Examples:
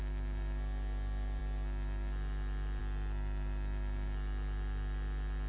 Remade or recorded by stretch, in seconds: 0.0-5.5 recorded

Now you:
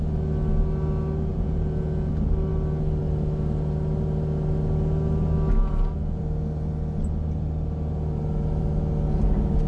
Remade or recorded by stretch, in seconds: 0.0-1.3 recorded; 1.3-2.1 remade; 2.1-5.6 recorded; 5.6-6.2 remade; 6.2-9.7 recorded

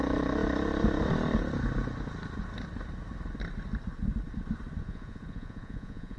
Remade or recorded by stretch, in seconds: 0.0-4.8 recorded; 4.8-6.2 remade